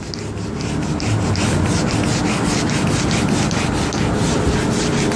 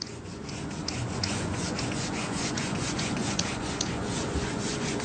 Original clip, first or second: first